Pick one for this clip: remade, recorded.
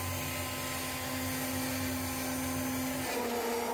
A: recorded